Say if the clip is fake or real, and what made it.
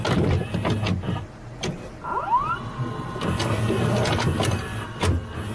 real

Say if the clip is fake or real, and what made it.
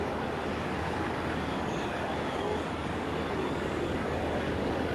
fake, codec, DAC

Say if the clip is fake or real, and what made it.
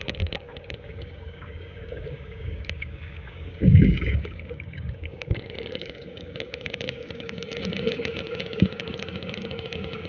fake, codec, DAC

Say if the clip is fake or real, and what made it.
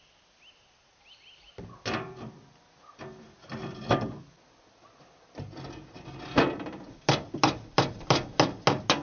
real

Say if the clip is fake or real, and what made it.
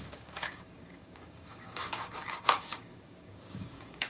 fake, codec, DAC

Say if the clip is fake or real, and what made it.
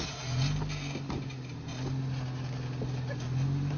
real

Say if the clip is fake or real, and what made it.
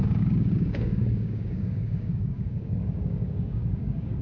fake, codec, DAC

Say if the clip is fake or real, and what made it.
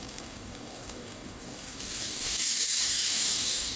fake, codec, DAC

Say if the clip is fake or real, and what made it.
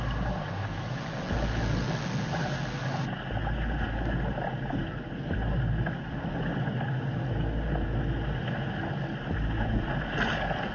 real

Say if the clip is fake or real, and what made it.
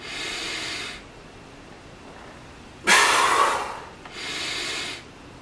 real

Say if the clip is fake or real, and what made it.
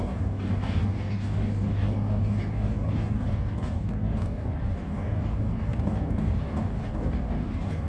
fake, codec, DAC